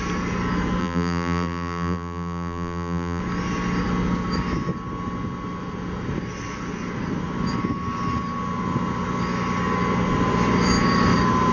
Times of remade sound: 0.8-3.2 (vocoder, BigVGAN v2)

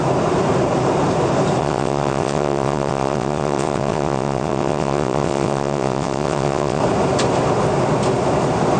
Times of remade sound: 1.6-6.8 (vocoder, WaveNeXt)

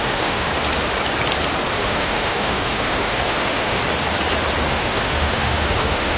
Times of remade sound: 0.0-0.5 (autoencoder, DAC-VAE); 1.7-3.8; 4.7-6.2